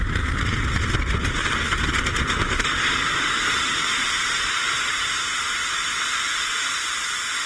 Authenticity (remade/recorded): recorded